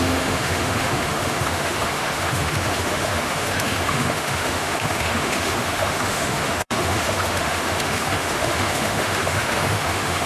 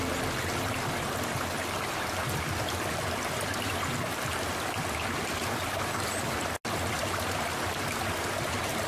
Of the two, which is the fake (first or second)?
first